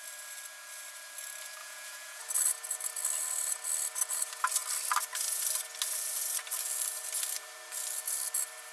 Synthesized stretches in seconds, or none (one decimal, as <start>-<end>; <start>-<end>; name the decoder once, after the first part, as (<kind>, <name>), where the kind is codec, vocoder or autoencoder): 1.6-2.2 (vocoder, Vocos)